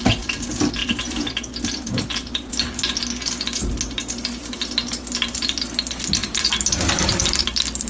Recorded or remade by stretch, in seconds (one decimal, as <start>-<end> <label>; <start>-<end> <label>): 0.0-0.8 recorded; 0.8-2.5 remade; 2.5-6.2 recorded; 6.2-7.4 remade; 7.4-7.9 recorded